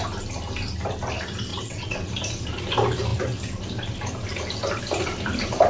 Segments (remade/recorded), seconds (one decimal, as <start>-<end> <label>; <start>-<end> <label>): 0.0-1.5 recorded; 1.5-2.1 remade; 2.1-5.7 recorded